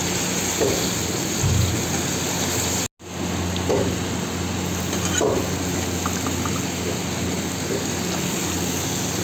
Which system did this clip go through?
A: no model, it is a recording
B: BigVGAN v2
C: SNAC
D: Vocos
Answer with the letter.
A